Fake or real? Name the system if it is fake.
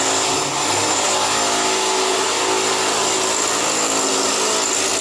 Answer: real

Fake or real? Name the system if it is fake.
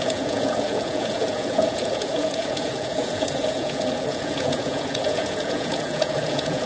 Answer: fake, vocoder, Vocos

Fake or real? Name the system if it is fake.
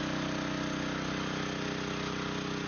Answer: real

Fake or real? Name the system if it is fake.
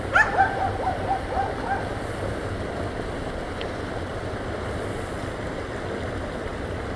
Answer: real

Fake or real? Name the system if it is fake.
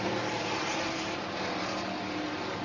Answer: real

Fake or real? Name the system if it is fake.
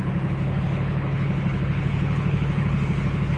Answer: fake, codec, HILCodec